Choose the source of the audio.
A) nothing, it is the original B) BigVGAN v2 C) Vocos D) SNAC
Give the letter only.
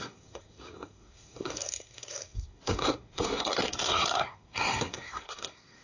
D